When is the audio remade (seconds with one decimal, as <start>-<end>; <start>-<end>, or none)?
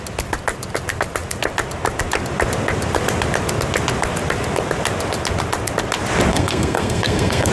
6.3-7.5